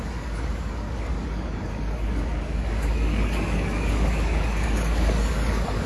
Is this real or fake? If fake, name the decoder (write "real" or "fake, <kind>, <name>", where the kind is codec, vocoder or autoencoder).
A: fake, codec, DAC